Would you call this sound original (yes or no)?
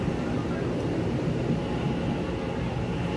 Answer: yes